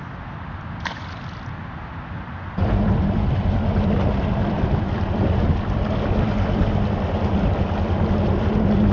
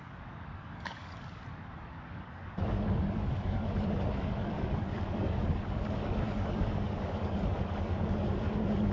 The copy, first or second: second